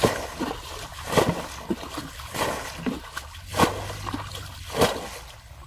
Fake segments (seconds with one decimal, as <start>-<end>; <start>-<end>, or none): none